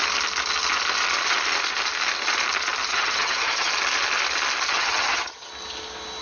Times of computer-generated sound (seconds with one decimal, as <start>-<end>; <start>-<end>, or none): 2.9-3.7; 4.7-5.5